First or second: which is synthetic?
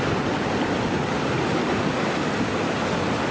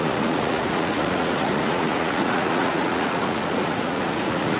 second